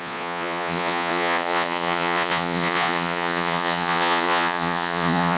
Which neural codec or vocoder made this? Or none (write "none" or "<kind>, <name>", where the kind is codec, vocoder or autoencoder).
vocoder, Vocos